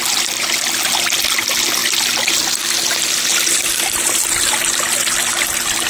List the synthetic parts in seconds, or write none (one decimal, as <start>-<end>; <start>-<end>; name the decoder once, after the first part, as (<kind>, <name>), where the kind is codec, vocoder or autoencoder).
3.3-5.9 (vocoder, BigVGAN v2)

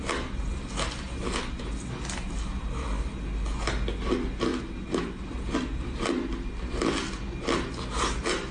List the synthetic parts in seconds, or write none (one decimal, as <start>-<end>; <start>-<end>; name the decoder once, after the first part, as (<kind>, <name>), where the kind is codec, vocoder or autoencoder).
none

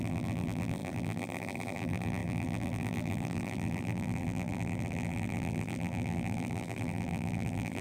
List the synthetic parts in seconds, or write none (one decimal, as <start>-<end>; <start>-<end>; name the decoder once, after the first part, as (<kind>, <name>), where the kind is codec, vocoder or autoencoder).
0.0-7.8 (vocoder, BigVGAN v2)

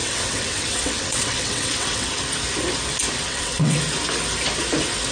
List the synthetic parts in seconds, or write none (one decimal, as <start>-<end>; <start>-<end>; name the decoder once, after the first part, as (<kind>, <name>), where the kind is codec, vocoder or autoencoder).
0.0-2.1 (vocoder, WaveNeXt); 3.3-3.8

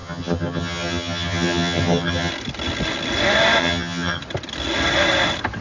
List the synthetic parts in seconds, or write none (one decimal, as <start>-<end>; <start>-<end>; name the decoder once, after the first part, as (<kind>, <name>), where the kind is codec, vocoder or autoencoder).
0.0-2.3 (vocoder, HiFi-GAN); 3.6-4.2

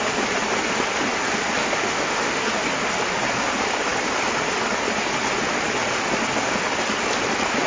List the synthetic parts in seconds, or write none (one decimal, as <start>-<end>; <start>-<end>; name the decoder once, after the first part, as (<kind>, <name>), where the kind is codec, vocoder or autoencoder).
1.6-2.4 (autoencoder, DAC-VAE)

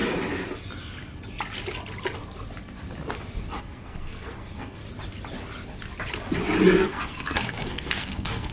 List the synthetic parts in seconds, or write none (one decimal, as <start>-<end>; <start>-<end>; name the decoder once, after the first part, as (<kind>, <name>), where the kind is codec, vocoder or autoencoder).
3.6-4.8 (codec, SNAC); 6.8-8.5

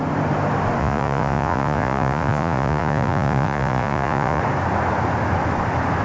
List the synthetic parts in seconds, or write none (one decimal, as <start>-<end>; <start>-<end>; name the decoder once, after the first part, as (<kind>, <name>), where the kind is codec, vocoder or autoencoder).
0.8-4.4 (vocoder, Vocos)